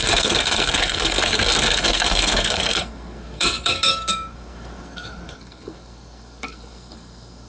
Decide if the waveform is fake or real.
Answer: fake